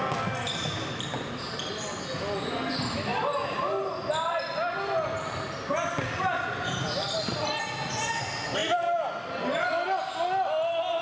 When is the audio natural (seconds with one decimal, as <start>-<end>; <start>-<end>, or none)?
0.0-11.0